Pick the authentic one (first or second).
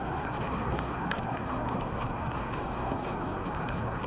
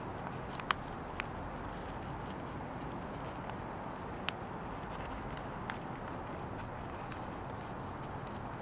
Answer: second